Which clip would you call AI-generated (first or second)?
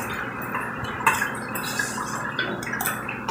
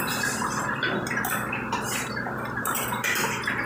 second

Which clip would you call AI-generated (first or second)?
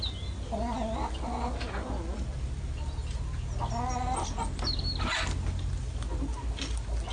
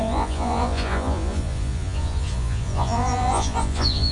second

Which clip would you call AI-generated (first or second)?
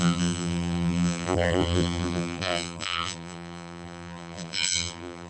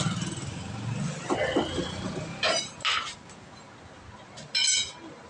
first